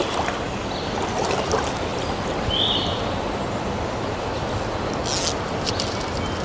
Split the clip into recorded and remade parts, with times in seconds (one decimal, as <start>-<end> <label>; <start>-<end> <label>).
0.0-1.0 remade; 1.0-1.9 recorded; 1.9-4.9 remade; 4.9-6.4 recorded

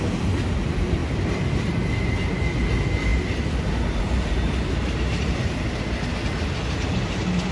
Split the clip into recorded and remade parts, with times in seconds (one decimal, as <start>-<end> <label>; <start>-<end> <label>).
0.0-1.0 recorded; 1.0-2.4 remade; 2.4-3.1 recorded; 3.1-4.0 remade; 4.0-7.5 recorded

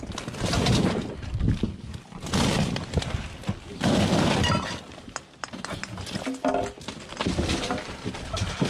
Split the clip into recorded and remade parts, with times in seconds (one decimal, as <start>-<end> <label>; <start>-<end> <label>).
0.0-8.7 recorded

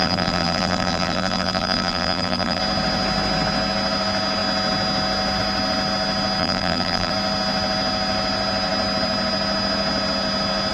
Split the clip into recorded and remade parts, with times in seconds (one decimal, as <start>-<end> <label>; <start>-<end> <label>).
0.0-2.6 remade; 2.6-6.4 recorded; 6.4-7.1 remade; 7.1-10.7 recorded

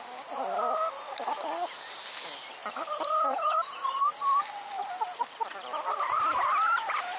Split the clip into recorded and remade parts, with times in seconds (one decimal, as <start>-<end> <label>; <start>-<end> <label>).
0.0-2.6 recorded; 2.6-4.2 remade; 4.2-7.2 recorded

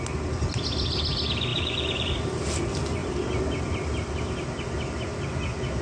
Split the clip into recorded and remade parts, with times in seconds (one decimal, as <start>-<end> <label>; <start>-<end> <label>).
0.0-1.5 recorded; 1.5-2.1 remade; 2.1-3.0 recorded; 3.0-3.5 remade; 3.5-5.8 recorded

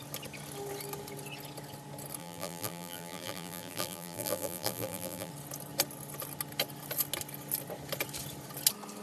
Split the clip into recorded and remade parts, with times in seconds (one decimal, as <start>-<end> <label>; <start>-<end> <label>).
0.0-2.2 recorded; 2.2-5.3 remade; 5.3-9.0 recorded